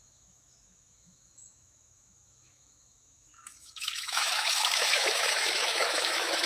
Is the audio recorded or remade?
remade